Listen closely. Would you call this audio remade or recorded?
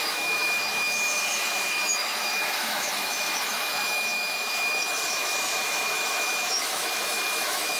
remade